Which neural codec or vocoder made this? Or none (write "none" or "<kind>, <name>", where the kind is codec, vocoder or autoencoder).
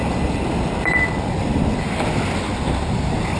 none